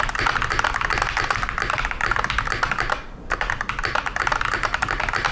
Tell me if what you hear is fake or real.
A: real